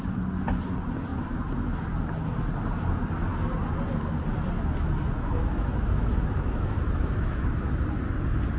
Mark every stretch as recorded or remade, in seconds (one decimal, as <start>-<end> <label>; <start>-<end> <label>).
0.0-5.4 recorded; 5.4-7.7 remade; 7.7-8.6 recorded